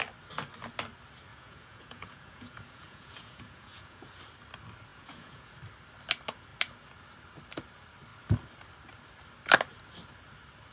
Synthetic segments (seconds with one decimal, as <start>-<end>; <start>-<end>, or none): 1.3-4.2; 4.9-5.5